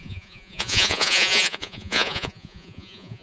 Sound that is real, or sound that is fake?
fake